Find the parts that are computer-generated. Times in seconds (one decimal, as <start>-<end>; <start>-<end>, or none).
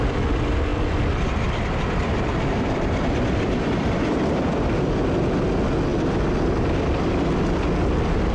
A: 0.7-4.4